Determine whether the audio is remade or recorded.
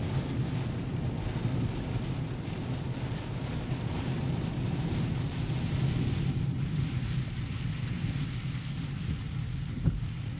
recorded